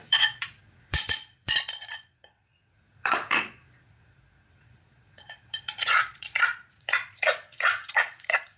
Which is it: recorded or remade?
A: remade